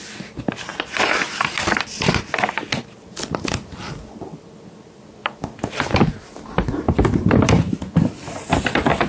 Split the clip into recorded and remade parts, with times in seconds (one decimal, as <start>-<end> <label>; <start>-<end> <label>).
0.0-9.1 recorded